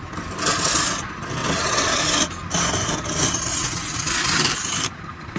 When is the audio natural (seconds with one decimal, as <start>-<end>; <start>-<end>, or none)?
0.0-1.4; 2.0-3.5; 4.2-5.4